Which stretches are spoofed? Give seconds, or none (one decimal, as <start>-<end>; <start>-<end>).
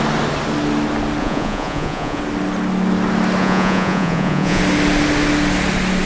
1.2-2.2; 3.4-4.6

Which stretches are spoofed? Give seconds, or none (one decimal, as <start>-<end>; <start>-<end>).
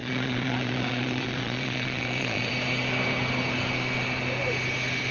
0.0-2.5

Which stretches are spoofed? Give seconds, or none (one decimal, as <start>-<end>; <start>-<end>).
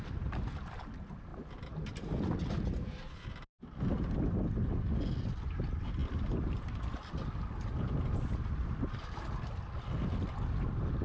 none